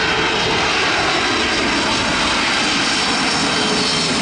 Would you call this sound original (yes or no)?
yes